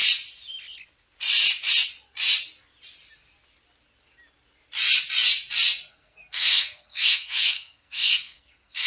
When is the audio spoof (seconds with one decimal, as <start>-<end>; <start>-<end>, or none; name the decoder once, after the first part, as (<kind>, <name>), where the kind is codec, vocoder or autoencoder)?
5.9-8.9 (codec, SNAC)